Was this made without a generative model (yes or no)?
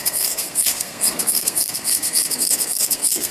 no